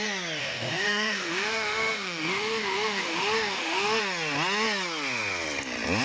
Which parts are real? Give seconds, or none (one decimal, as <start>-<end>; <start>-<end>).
0.0-0.4; 4.0-6.0